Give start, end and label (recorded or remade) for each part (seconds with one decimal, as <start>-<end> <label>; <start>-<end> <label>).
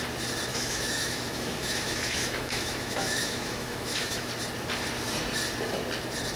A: 0.0-0.5 recorded; 0.5-4.3 remade; 4.3-6.4 recorded